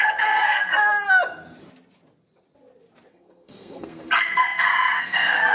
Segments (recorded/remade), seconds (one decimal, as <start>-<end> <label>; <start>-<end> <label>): 0.0-0.7 remade; 0.7-3.1 recorded; 3.1-5.5 remade